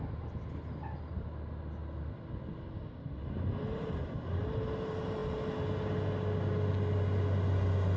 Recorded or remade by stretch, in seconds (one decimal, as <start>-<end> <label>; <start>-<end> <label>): 0.0-8.0 recorded

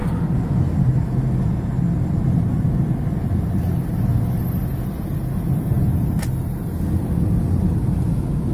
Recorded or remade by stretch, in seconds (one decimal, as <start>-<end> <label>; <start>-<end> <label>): 0.0-8.5 recorded

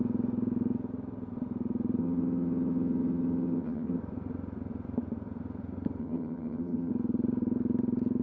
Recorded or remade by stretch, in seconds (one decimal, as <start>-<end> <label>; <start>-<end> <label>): 0.0-2.0 recorded; 2.0-4.0 remade; 4.0-6.0 recorded; 6.0-6.9 remade; 6.9-8.2 recorded

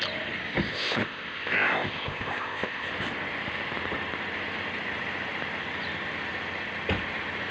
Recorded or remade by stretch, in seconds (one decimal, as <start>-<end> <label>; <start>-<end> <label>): 0.0-0.7 recorded; 0.7-2.9 remade; 2.9-7.5 recorded